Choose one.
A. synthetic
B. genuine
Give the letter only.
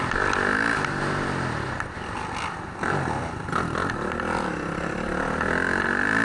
B